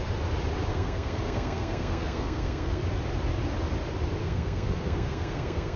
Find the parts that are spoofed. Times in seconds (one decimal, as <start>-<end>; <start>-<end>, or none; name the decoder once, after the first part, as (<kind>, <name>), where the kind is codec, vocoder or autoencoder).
0.7-2.8 (codec, SNAC); 4.2-5.8